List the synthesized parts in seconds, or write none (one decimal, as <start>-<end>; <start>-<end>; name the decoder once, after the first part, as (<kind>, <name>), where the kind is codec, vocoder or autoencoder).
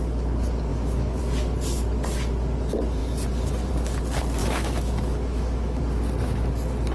0.7-1.2 (autoencoder, DAC-VAE); 4.4-5.8